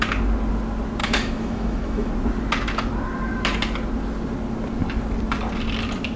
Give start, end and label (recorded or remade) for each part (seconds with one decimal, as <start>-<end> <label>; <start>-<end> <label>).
0.0-1.0 recorded; 1.0-2.1 remade; 2.1-6.2 recorded